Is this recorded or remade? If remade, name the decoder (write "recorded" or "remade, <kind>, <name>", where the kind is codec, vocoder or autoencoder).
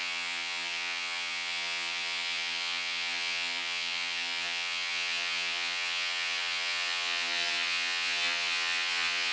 remade, vocoder, HiFi-GAN